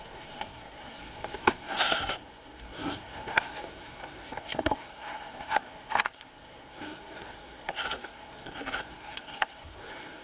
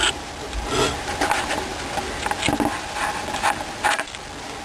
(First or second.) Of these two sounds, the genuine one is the second